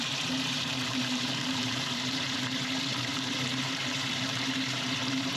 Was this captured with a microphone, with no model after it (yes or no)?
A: no